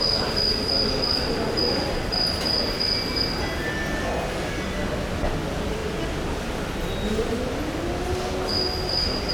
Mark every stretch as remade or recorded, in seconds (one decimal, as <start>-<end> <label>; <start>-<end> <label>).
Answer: 0.0-9.3 recorded

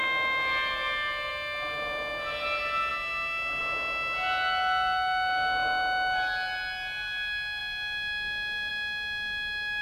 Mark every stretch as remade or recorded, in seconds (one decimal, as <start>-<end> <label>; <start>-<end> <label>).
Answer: 0.0-9.8 recorded

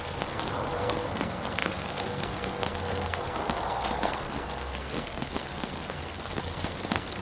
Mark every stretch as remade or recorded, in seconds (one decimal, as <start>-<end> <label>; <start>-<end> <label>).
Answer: 0.0-7.2 remade

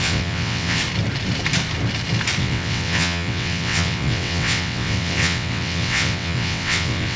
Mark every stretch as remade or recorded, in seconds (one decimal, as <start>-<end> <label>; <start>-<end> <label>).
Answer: 0.0-0.8 remade; 0.8-2.4 recorded; 2.4-7.2 remade

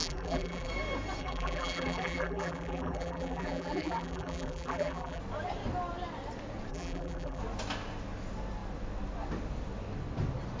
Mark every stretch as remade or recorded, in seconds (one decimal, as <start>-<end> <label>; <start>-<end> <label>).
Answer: 0.0-0.7 remade; 0.7-1.2 recorded; 1.2-5.2 remade; 5.2-6.7 recorded; 6.7-7.4 remade; 7.4-10.6 recorded

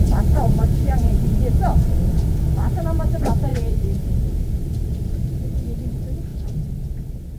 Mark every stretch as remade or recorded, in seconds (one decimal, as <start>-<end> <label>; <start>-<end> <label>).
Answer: 0.0-1.9 remade; 1.9-3.5 recorded; 3.5-5.2 remade; 5.2-7.4 recorded